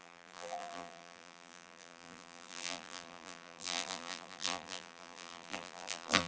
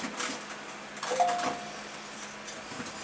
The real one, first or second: second